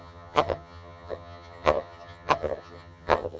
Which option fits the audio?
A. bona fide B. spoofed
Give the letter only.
B